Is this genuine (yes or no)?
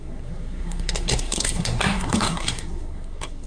no